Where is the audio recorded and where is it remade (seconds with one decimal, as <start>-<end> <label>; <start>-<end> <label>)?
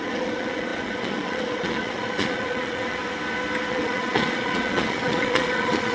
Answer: 0.0-3.0 remade; 3.0-3.7 recorded; 3.7-5.9 remade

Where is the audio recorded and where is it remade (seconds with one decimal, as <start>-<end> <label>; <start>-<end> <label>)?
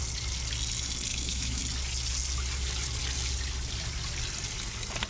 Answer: 0.0-1.1 recorded; 1.1-1.6 remade; 1.6-5.1 recorded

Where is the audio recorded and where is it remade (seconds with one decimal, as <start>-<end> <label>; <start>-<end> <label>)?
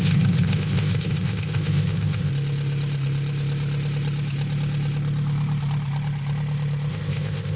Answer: 0.0-2.3 remade; 2.3-6.9 recorded; 6.9-7.6 remade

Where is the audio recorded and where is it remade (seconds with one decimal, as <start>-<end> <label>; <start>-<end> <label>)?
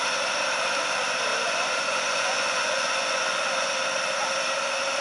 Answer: 0.0-1.3 recorded; 1.3-3.7 remade; 3.7-5.0 recorded